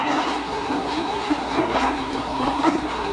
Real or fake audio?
fake